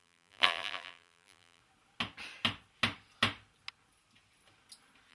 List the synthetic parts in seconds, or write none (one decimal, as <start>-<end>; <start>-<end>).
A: 0.0-1.6